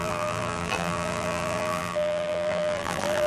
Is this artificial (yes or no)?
yes